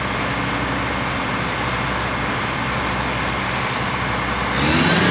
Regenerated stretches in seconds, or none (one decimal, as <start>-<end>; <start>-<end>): none